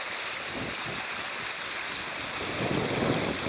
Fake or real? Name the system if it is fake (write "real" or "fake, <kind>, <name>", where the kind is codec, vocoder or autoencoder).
real